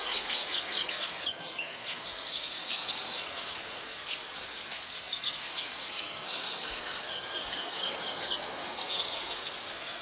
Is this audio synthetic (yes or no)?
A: yes